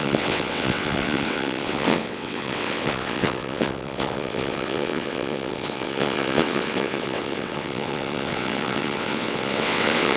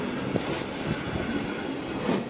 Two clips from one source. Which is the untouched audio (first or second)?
second